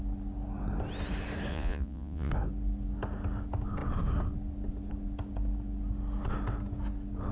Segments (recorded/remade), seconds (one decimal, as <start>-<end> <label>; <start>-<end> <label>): 0.0-1.5 recorded; 1.5-2.3 remade; 2.3-7.3 recorded